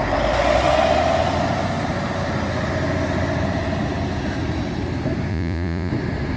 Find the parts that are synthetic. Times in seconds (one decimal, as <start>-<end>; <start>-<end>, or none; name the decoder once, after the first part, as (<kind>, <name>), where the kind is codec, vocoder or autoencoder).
5.3-5.9 (vocoder, Vocos)